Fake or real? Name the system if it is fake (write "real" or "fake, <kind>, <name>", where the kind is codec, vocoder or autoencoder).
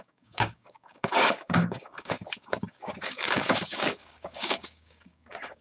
fake, codec, DAC